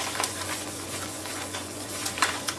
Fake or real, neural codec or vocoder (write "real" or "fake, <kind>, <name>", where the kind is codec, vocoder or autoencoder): fake, vocoder, Vocos